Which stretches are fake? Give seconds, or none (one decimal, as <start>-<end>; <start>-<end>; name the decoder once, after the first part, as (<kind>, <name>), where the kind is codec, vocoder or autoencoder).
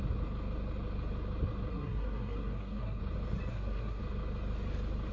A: 1.7-3.0 (codec, SNAC); 3.5-4.0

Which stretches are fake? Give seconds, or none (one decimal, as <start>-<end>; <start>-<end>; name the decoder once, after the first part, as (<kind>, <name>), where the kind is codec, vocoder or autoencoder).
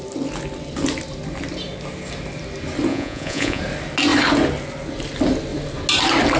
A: 2.9-3.6 (vocoder, Vocos)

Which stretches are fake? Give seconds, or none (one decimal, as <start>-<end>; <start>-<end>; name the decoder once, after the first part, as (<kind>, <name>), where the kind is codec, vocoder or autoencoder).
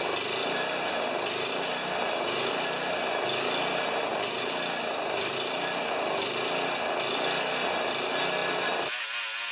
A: 4.1-5.9 (vocoder, BigVGAN v2)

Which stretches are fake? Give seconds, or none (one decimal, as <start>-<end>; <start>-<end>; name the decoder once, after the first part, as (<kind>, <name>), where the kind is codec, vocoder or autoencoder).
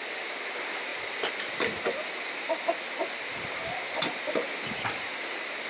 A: none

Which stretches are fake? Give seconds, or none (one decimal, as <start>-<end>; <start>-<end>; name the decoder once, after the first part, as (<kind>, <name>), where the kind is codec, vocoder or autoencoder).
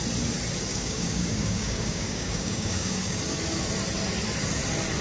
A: 0.7-3.2 (codec, DAC)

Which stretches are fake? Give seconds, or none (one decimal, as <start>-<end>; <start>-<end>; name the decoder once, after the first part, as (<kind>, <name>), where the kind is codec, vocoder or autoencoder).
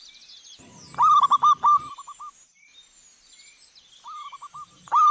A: none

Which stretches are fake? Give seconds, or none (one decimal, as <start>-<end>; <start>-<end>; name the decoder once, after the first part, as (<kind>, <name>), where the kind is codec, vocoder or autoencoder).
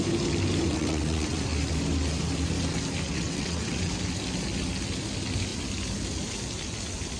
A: 0.7-1.4 (vocoder, WaveNeXt); 3.1-3.9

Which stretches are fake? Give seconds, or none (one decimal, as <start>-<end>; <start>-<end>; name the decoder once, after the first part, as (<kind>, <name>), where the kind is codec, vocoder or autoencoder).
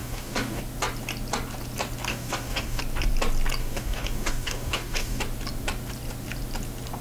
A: 0.0-0.6 (codec, DAC); 2.1-2.8; 3.6-5.2